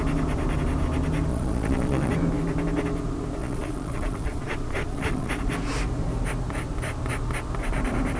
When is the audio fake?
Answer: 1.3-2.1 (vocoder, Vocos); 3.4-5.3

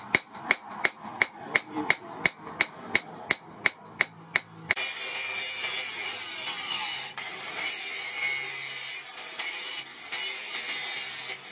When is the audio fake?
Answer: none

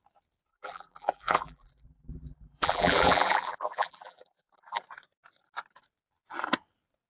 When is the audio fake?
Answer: 0.5-4.8 (vocoder, BigVGAN v2)